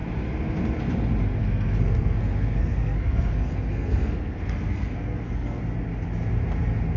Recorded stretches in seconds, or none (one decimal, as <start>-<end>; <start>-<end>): 0.0-1.4; 5.6-7.0